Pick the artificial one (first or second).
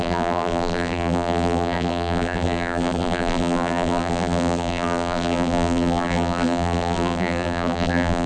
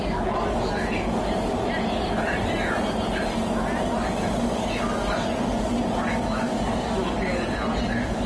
first